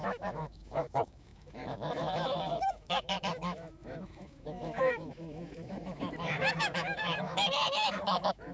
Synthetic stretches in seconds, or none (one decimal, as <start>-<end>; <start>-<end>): 0.0-8.5